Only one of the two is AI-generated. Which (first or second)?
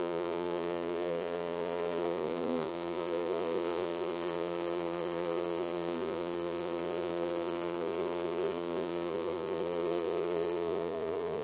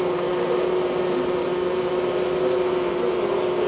first